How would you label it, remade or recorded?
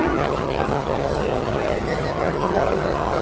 remade